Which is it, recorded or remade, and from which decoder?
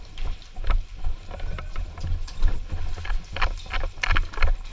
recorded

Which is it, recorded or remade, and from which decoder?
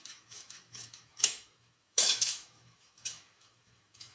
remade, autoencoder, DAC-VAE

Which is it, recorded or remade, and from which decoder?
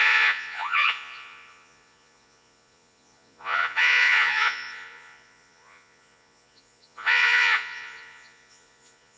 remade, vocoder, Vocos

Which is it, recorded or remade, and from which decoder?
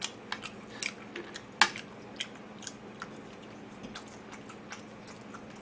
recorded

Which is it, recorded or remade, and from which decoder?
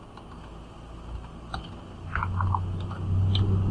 recorded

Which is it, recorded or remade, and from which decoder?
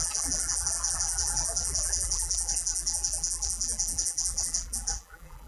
remade, vocoder, BigVGAN v2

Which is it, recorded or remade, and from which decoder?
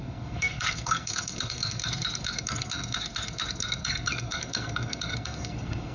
remade, codec, SNAC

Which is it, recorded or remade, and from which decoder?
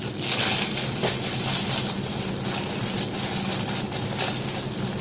recorded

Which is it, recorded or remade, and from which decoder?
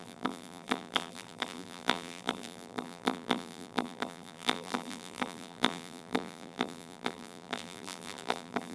remade, vocoder, BigVGAN v2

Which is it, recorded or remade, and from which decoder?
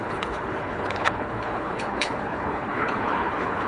remade, codec, HILCodec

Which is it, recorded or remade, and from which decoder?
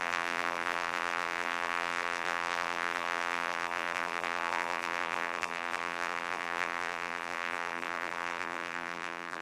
remade, vocoder, BigVGAN v2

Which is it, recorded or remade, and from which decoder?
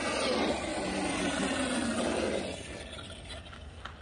recorded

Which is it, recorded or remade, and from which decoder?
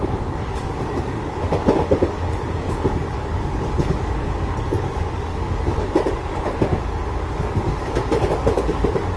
remade, codec, DAC